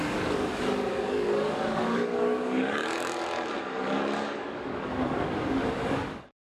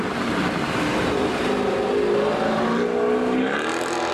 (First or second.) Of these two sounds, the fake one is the first